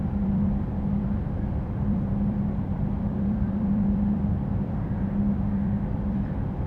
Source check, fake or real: fake